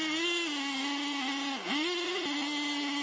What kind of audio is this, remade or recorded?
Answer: recorded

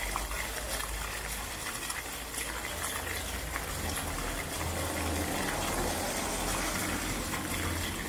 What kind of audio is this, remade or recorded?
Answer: recorded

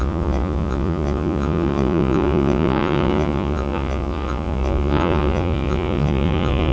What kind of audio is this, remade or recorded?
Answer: remade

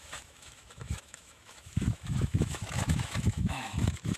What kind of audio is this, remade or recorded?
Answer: remade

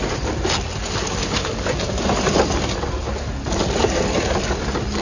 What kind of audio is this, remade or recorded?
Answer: recorded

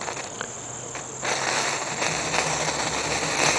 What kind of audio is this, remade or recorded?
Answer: recorded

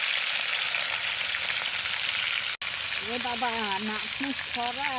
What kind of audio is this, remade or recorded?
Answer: recorded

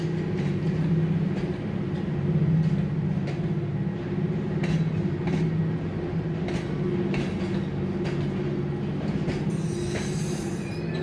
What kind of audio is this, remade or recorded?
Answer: recorded